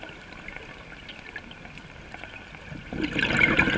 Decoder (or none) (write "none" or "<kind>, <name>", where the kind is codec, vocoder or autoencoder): none